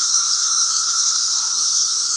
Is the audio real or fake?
fake